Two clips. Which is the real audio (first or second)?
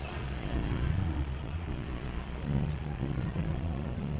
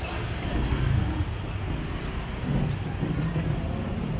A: second